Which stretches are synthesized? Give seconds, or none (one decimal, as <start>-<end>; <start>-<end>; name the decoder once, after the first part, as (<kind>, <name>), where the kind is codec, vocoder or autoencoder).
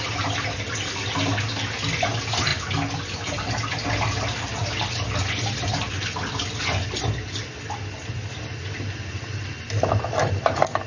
none